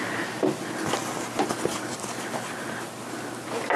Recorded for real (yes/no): yes